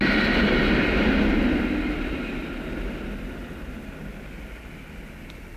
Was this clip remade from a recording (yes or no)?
no